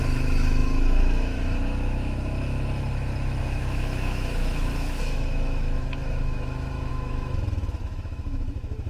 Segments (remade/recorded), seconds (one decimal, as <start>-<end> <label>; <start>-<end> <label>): 0.0-8.9 remade